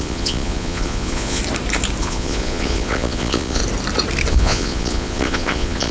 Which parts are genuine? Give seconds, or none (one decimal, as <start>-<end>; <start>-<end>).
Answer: 1.4-2.0; 3.6-4.3